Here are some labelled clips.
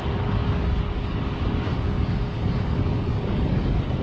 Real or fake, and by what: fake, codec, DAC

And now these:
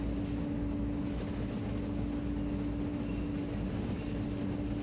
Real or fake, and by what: real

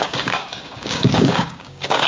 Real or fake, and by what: fake, codec, DAC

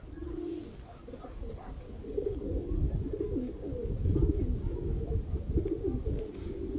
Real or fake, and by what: fake, codec, DAC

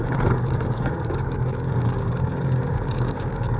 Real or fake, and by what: fake, codec, DAC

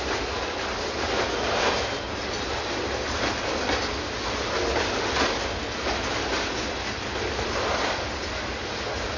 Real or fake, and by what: real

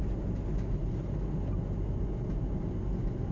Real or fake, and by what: real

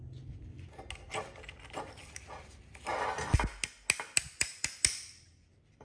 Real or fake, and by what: real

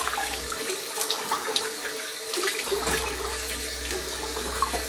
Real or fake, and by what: fake, codec, DAC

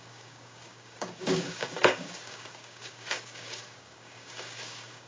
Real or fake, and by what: fake, codec, DAC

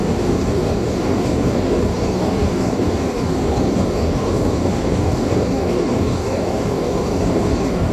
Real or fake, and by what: fake, codec, DAC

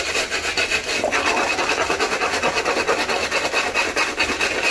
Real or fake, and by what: real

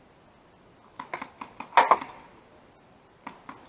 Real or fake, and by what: real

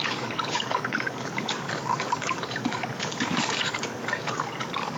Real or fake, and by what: fake, codec, DAC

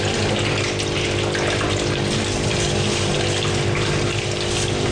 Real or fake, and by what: real